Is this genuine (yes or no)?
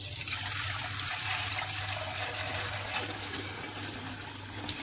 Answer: yes